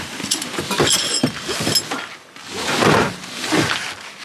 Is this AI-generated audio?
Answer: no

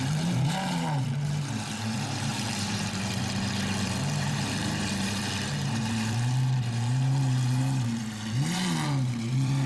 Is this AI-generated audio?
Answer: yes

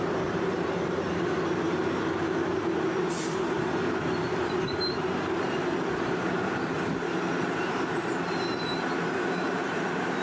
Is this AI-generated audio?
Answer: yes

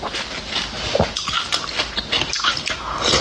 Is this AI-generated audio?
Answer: yes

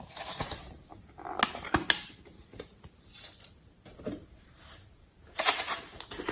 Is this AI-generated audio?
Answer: yes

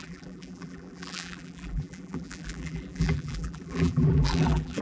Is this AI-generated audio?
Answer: yes